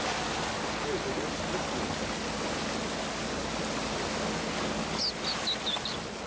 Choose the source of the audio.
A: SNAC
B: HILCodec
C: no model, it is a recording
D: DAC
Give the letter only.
C